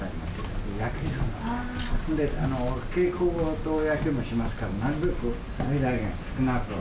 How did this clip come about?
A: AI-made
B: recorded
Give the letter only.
B